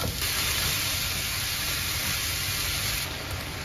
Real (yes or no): yes